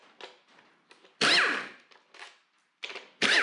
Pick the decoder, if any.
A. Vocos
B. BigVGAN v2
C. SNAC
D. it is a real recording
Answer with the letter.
D